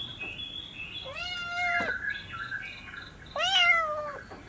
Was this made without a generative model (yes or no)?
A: yes